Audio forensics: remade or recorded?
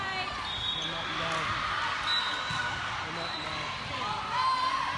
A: recorded